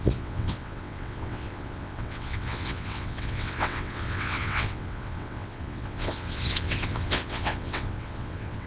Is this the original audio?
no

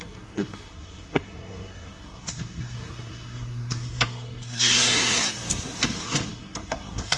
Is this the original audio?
no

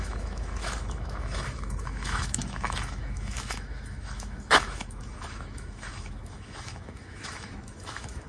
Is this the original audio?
no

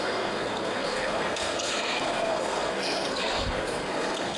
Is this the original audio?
no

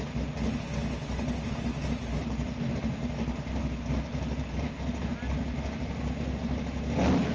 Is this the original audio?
yes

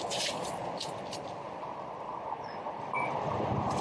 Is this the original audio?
no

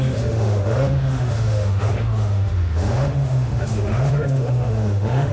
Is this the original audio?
no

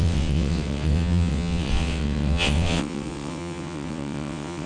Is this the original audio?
no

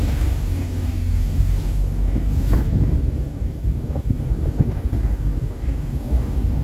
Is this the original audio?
no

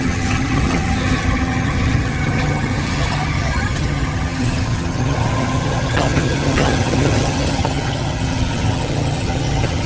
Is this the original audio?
no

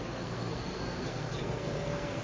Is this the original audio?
no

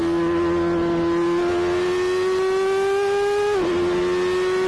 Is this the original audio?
yes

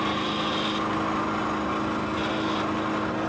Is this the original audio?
yes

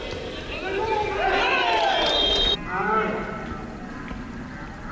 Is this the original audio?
yes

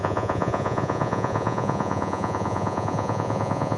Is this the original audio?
no